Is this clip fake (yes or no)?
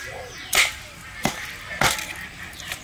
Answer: no